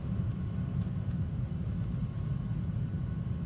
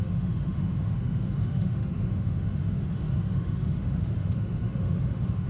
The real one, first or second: first